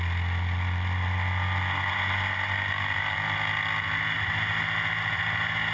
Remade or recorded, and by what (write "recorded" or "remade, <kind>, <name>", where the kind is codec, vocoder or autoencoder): recorded